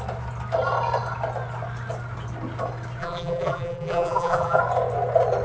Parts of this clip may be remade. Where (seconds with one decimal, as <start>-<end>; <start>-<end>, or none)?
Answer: 3.0-4.6

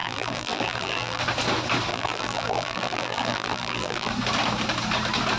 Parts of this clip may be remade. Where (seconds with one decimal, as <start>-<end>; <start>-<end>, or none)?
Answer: 0.0-1.2; 1.9-4.1